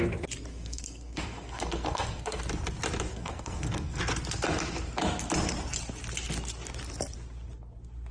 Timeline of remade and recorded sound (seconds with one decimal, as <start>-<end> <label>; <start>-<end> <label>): 0.0-0.5 recorded; 0.5-2.4 remade; 2.4-3.1 recorded; 3.1-4.0 remade; 4.0-8.1 recorded